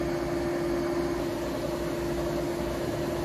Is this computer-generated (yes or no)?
no